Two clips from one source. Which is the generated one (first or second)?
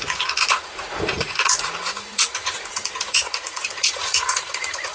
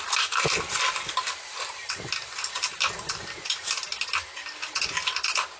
first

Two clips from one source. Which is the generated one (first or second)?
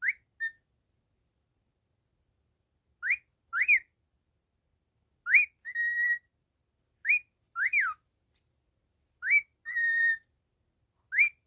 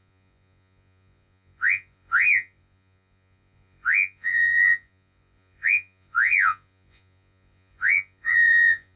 second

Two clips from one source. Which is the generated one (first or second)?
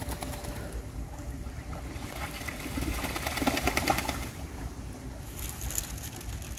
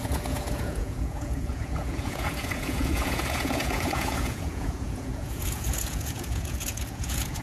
second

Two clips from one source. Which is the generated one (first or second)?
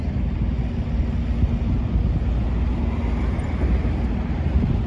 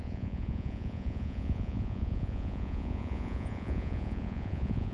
second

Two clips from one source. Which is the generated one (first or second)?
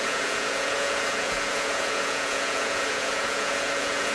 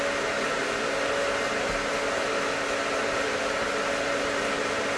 first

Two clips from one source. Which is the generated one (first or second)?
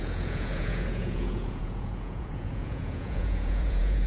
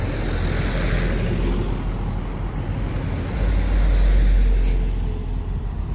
first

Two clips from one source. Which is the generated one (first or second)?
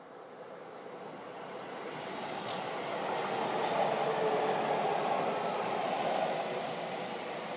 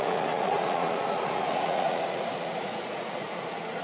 second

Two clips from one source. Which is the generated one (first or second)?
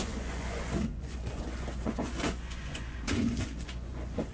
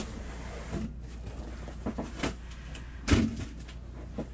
first